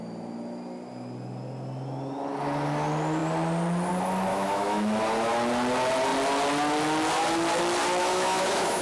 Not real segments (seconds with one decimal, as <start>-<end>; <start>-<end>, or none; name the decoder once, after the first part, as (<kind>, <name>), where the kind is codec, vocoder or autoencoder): 4.3-5.0 (autoencoder, DAC-VAE); 8.0-8.8

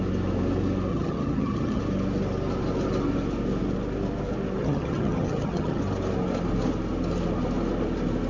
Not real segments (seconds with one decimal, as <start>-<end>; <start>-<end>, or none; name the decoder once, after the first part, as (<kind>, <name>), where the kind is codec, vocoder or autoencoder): 0.9-1.8 (vocoder, HiFi-GAN); 4.6-5.8

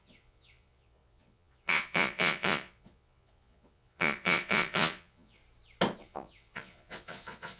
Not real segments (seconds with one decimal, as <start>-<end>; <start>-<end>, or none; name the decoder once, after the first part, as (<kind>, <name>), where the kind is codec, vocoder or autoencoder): 0.0-5.4 (vocoder, Vocos); 6.0-7.6

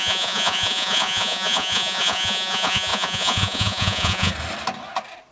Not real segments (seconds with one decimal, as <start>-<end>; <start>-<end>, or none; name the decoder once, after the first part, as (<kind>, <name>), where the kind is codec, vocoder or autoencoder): 0.0-4.3 (vocoder, Vocos)